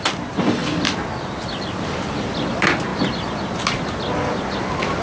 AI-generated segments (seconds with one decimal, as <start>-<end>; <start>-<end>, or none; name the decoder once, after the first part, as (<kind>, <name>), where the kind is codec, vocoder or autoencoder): none